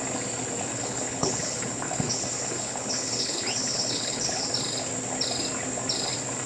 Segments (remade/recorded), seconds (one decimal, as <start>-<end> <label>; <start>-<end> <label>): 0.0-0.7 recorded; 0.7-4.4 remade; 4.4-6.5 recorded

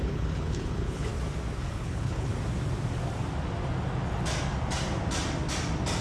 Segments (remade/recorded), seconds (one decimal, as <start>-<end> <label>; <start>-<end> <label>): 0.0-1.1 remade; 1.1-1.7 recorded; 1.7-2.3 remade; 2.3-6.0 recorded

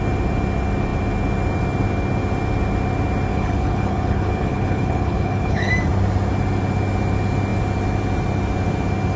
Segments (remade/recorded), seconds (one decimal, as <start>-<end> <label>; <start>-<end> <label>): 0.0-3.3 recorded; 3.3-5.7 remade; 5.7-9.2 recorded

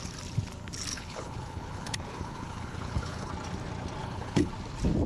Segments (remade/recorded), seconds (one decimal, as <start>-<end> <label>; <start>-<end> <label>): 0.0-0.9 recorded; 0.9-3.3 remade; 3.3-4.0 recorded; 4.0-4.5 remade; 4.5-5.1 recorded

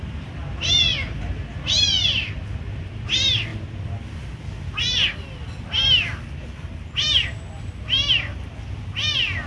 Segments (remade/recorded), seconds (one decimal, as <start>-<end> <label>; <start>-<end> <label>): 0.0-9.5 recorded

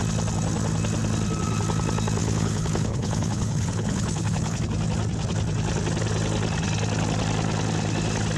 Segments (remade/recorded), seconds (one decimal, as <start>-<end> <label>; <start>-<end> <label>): 0.0-2.2 recorded; 2.2-4.6 remade; 4.6-8.4 recorded